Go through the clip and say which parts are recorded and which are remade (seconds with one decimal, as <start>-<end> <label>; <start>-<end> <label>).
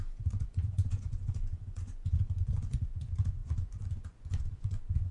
0.0-5.1 remade